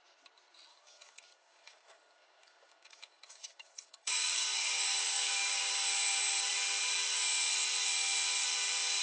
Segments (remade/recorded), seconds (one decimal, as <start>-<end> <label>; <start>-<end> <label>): 0.0-0.7 recorded; 0.7-5.7 remade; 5.7-9.0 recorded

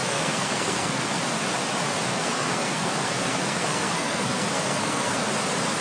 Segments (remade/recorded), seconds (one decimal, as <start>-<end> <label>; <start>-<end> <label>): 0.0-1.2 remade; 1.2-2.1 recorded; 2.1-5.3 remade; 5.3-5.8 recorded

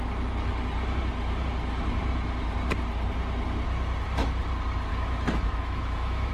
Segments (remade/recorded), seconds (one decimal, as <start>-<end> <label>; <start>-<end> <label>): 0.0-4.9 recorded; 4.9-6.3 remade

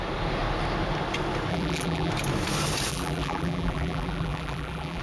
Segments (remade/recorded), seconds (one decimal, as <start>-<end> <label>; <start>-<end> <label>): 0.0-1.5 recorded; 1.5-2.1 remade; 2.1-2.9 recorded; 2.9-5.0 remade